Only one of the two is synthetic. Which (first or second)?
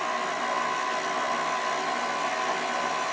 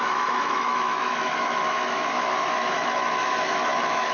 second